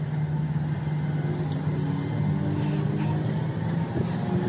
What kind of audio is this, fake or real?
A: real